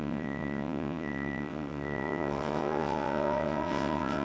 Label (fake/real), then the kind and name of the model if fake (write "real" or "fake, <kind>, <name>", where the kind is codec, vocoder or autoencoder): fake, vocoder, WaveNeXt